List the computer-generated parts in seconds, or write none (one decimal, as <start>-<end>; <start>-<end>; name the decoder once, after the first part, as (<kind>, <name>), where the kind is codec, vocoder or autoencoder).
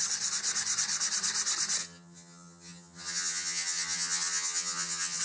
1.8-5.2 (vocoder, HiFi-GAN)